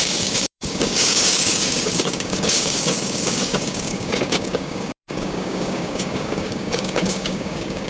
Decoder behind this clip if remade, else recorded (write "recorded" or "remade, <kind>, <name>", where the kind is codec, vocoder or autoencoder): remade, codec, DAC